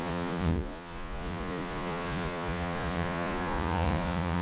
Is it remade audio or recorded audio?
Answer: remade